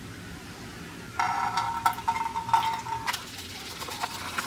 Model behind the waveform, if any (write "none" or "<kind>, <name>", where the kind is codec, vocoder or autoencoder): none